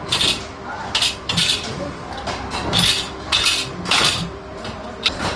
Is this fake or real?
fake